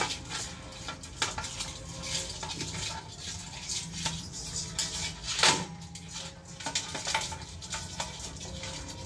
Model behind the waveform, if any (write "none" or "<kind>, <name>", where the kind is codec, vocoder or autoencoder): none